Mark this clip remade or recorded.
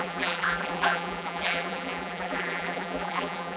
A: remade